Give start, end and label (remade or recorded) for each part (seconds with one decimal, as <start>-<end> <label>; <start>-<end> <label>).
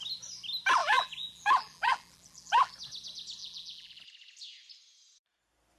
0.0-0.8 recorded; 0.8-2.7 remade; 2.7-3.4 recorded; 3.4-4.0 remade; 4.0-5.8 recorded